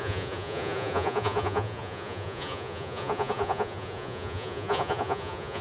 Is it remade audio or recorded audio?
remade